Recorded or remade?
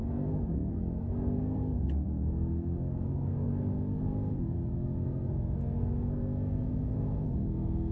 remade